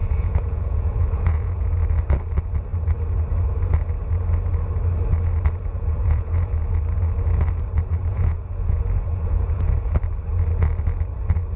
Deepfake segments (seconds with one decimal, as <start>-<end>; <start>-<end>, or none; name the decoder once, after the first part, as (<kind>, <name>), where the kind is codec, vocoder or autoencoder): 0.0-1.7 (vocoder, Vocos); 5.7-6.6; 8.0-9.9